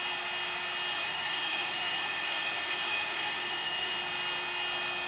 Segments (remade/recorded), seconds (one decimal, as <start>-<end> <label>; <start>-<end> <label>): 0.0-0.9 recorded; 0.9-4.0 remade; 4.0-5.1 recorded